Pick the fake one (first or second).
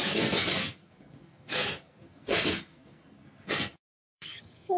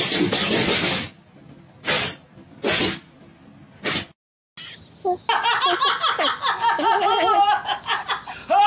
first